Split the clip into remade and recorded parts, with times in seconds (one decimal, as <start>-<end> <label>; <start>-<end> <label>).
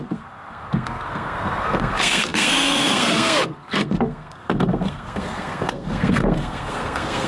0.0-7.3 remade